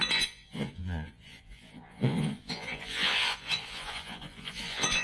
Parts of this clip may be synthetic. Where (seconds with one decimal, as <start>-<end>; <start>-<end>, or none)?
0.0-5.0

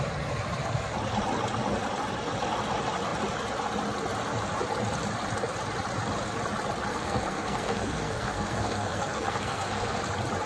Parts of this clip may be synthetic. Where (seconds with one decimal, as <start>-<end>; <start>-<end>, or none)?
6.9-10.0

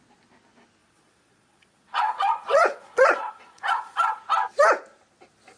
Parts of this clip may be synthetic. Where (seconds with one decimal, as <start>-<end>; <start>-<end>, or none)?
0.8-4.2

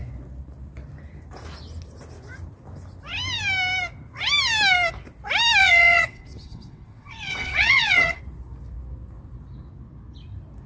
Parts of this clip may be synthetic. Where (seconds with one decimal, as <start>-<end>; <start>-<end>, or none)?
5.6-8.2

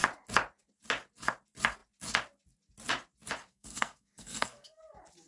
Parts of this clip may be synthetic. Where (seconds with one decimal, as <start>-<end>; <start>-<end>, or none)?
3.5-4.8

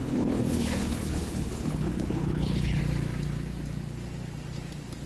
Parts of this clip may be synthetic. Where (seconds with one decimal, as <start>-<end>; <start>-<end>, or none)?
0.0-2.8

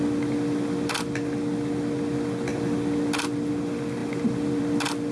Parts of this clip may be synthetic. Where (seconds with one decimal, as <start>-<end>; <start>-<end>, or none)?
none